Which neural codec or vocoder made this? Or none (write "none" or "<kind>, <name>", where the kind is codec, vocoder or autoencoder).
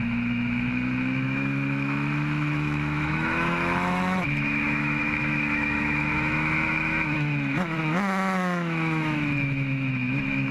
autoencoder, DAC-VAE